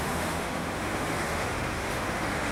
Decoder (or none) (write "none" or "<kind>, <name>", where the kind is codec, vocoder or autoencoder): autoencoder, DAC-VAE